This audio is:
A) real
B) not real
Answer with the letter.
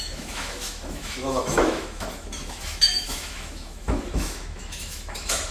B